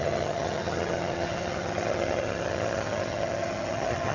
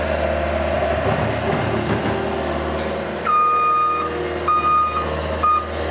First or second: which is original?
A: second